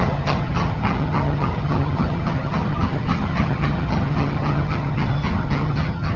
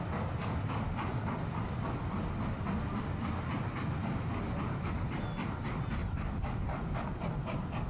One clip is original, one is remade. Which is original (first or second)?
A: second